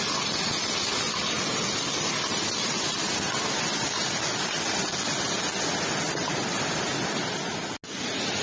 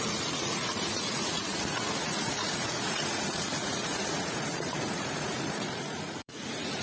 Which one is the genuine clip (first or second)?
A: first